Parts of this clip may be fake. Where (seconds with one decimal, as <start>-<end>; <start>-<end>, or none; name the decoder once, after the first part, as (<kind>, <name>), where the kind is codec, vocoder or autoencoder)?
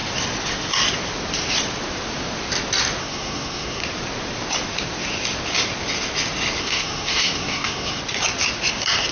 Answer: 3.0-3.8 (codec, SNAC); 6.6-8.0